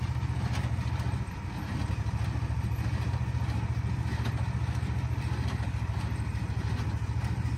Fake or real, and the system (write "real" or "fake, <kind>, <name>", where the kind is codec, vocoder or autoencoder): real